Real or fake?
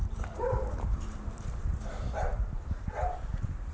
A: fake